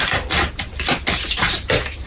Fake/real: real